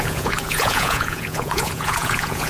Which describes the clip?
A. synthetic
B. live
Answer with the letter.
A